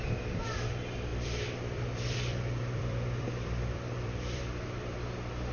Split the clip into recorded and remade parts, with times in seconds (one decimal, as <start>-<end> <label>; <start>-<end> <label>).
0.0-1.1 recorded; 1.1-4.4 remade; 4.4-5.5 recorded

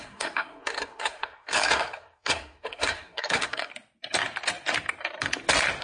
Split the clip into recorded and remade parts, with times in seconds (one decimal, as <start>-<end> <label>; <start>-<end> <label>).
0.0-3.7 remade; 3.7-5.8 recorded

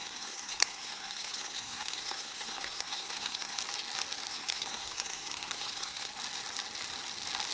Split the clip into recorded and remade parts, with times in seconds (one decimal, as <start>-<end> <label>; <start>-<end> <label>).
0.0-3.6 remade; 3.6-4.3 recorded; 4.3-6.1 remade; 6.1-7.5 recorded

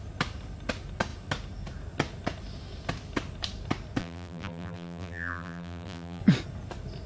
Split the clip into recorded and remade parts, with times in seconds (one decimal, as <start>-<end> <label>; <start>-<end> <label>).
0.0-4.0 recorded; 4.0-6.2 remade; 6.2-7.1 recorded

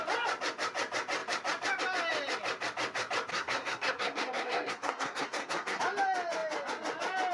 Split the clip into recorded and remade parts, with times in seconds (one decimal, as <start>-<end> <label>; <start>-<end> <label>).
0.0-3.3 recorded; 3.3-5.8 remade; 5.8-7.3 recorded

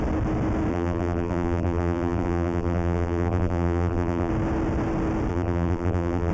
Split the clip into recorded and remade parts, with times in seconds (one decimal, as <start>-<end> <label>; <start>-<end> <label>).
0.0-0.7 recorded; 0.7-4.3 remade; 4.3-5.3 recorded; 5.3-6.3 remade